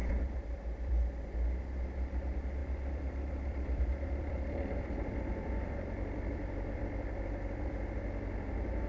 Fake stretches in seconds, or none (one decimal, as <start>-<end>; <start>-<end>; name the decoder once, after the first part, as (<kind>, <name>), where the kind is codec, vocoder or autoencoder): 0.0-1.6 (vocoder, BigVGAN v2); 2.6-7.8